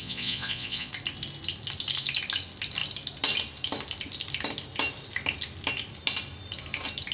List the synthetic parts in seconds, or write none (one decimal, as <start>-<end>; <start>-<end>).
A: 0.0-0.9